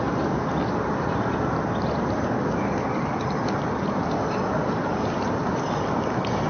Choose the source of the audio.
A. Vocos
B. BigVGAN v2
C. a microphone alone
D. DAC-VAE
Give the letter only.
C